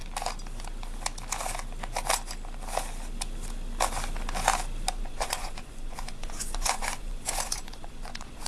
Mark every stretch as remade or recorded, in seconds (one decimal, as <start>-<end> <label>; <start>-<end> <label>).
0.0-5.0 recorded; 5.0-8.5 remade